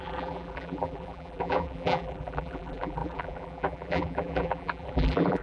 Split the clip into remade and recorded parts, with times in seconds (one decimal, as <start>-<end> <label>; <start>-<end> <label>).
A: 0.0-5.4 remade